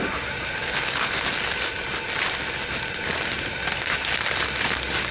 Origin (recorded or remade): recorded